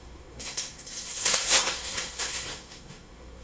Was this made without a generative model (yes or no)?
no